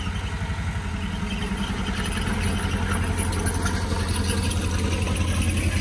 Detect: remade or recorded recorded